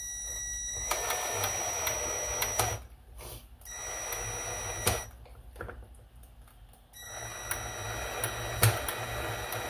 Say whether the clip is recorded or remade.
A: recorded